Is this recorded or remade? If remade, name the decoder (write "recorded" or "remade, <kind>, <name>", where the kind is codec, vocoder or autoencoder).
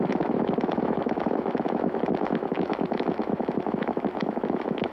remade, autoencoder, DAC-VAE